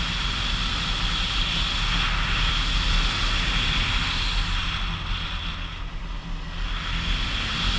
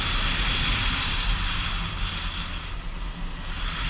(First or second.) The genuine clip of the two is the first